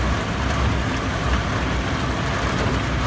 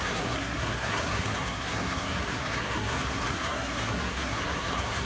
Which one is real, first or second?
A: first